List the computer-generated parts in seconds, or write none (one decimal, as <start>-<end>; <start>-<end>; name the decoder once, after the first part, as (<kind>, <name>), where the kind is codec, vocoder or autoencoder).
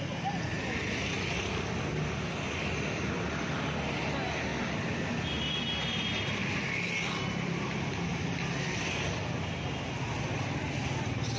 none